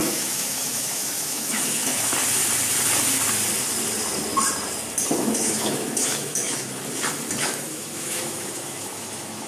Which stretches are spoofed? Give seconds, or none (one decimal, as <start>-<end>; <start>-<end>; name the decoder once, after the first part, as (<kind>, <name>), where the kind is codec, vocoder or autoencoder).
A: 0.0-2.1 (autoencoder, DAC-VAE); 5.2-6.8; 7.4-9.5